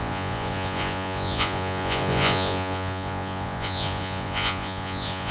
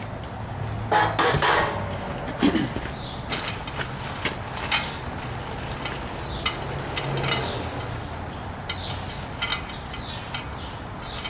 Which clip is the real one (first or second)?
second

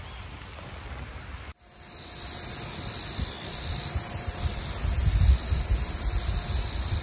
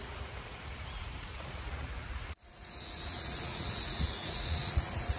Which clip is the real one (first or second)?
first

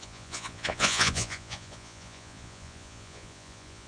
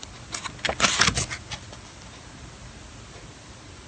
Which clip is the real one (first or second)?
second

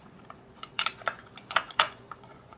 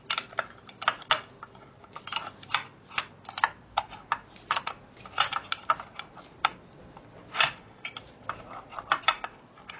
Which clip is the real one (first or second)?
second